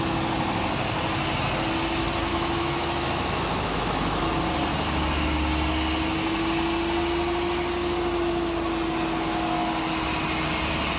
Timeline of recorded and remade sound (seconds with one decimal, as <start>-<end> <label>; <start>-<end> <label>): 0.0-2.3 recorded; 2.3-4.2 remade; 4.2-11.0 recorded